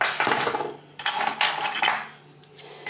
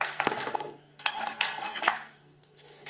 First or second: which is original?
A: first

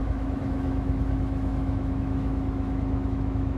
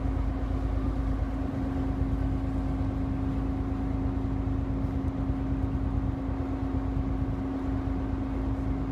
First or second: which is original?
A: second